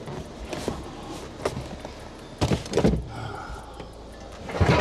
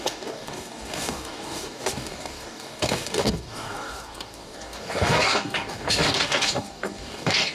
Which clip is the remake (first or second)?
second